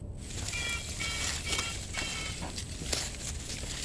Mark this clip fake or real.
real